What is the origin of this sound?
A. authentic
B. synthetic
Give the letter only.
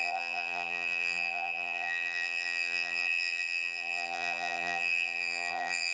B